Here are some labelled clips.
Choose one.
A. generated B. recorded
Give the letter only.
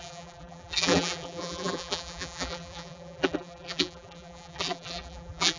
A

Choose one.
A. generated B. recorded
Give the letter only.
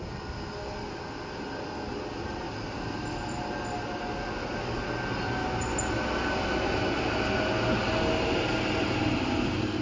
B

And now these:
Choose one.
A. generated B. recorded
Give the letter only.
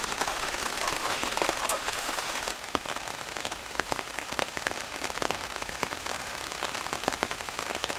A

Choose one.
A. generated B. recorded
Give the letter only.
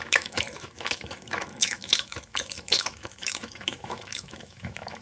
A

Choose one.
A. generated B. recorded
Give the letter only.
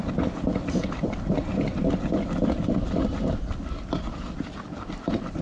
B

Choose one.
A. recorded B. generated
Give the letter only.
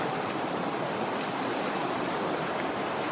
A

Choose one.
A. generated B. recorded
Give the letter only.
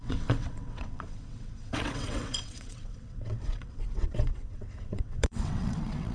A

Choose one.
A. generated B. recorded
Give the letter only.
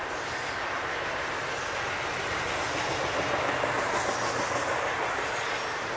B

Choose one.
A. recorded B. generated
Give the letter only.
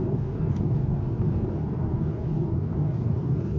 B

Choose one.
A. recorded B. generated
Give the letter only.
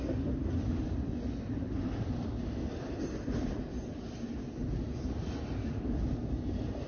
A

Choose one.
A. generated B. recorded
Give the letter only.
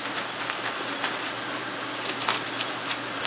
B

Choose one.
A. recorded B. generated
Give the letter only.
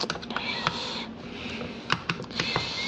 A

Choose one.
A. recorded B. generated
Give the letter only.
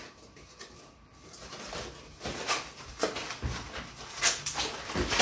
A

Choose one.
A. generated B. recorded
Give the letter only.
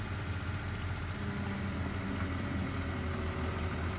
B